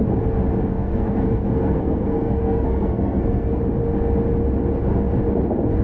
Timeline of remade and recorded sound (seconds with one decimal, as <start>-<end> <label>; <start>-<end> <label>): 0.0-0.7 recorded; 0.7-3.6 remade; 3.6-5.8 recorded